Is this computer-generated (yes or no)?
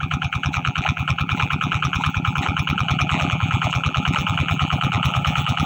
yes